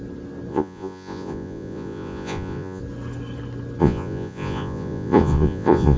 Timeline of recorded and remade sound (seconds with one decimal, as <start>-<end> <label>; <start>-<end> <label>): 0.0-0.5 recorded; 0.5-2.8 remade; 2.8-3.8 recorded; 3.8-6.0 remade